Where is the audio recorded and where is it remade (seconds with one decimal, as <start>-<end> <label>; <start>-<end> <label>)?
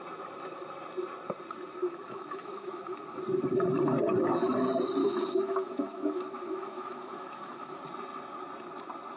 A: 0.0-1.8 recorded; 1.8-3.2 remade; 3.2-5.0 recorded; 5.0-7.8 remade; 7.8-9.2 recorded